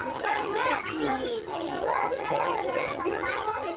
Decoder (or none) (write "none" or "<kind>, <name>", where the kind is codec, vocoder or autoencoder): vocoder, HiFi-GAN